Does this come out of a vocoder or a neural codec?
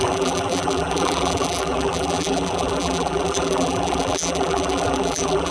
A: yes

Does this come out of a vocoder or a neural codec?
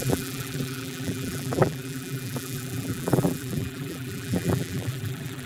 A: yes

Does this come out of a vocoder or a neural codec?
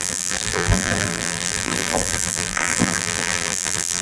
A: yes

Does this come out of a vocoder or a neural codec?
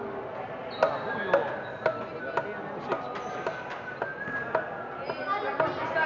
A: no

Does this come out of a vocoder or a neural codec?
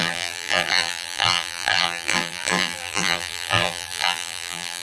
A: yes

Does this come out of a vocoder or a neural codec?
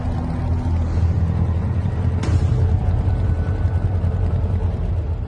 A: no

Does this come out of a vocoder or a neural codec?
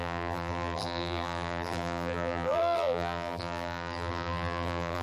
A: yes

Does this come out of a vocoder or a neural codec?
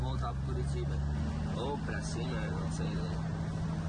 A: no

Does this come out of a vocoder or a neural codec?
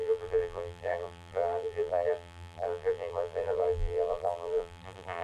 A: yes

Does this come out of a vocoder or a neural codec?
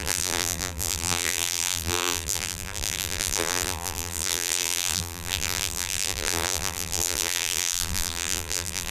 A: yes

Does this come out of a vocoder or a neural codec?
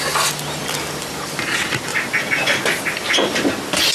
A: no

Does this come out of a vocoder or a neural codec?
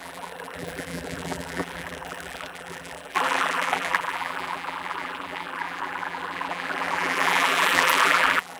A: yes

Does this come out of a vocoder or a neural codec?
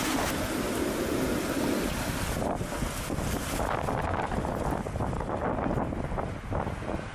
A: no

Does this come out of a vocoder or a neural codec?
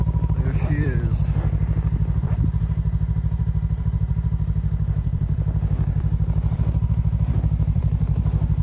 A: yes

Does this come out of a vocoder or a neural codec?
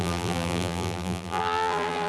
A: yes